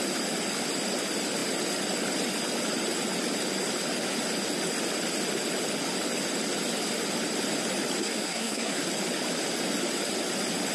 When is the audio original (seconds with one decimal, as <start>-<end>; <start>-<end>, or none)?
0.0-8.0; 8.8-10.7